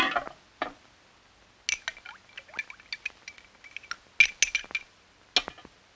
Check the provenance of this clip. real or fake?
real